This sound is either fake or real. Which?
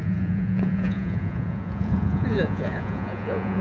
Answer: fake